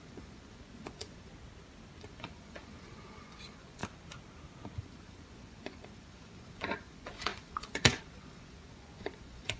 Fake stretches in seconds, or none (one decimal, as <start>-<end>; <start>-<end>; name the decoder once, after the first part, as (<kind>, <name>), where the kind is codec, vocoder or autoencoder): 0.0-1.3 (vocoder, Vocos); 2.0-3.8; 4.8-9.6